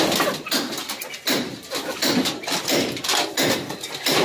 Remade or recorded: recorded